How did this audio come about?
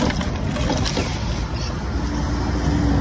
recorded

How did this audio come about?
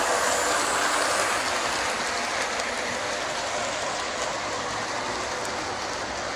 recorded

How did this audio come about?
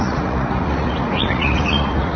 remade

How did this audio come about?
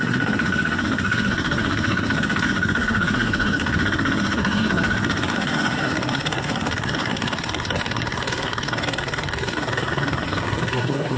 remade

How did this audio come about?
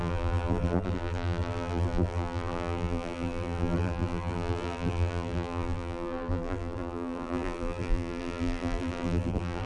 remade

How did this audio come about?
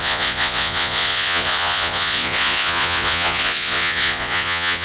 remade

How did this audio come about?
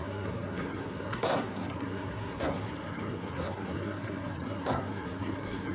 remade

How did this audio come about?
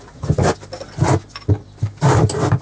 recorded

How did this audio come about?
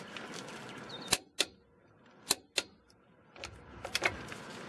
recorded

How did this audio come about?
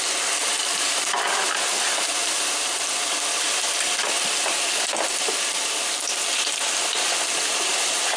recorded